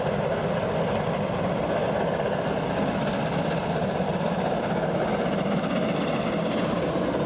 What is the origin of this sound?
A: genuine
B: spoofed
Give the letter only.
A